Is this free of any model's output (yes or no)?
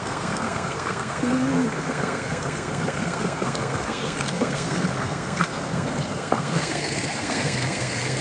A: no